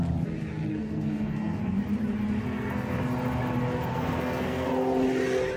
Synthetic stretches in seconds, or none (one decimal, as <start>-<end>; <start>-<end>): 0.7-1.6; 2.4-3.0; 3.9-4.7